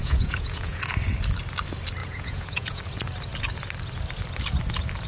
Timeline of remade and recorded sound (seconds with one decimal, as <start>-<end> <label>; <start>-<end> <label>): 0.0-0.8 remade; 0.8-2.0 recorded; 2.0-2.8 remade; 2.8-5.1 recorded